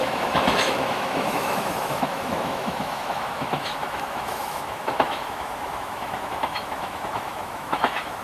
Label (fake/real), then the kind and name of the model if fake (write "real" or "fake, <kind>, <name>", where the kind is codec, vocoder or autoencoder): fake, autoencoder, DAC-VAE